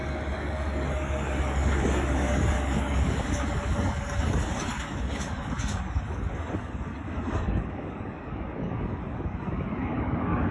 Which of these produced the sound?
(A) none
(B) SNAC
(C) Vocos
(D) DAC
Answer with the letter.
D